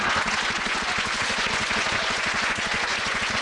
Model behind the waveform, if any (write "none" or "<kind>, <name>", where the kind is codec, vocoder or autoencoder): vocoder, Vocos